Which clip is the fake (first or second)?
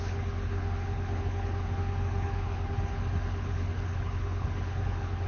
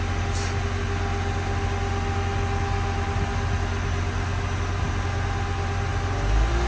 first